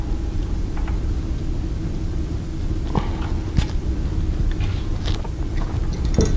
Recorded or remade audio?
recorded